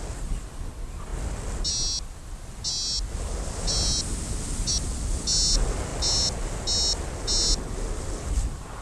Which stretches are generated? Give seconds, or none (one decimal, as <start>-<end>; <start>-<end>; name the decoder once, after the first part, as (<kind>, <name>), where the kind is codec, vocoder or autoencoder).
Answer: none